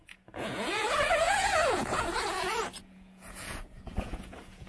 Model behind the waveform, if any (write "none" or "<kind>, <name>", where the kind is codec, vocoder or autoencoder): vocoder, Vocos